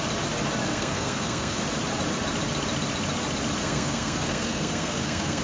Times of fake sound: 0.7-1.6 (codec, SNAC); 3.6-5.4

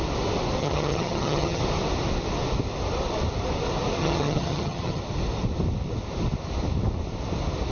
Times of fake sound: 0.6-1.6 (vocoder, HiFi-GAN); 4.0-5.0

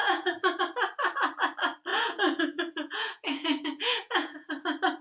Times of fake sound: 0.0-0.6 (vocoder, Vocos); 1.9-4.5

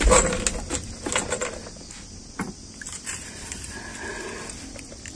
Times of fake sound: none

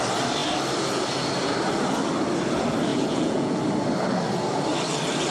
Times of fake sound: 2.9-3.6 (vocoder, Vocos)